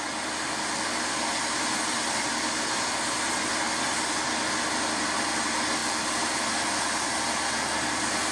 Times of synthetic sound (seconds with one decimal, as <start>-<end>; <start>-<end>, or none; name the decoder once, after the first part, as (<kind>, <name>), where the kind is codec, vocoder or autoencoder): none